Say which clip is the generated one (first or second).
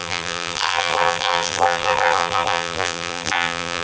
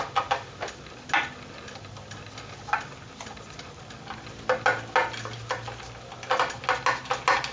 first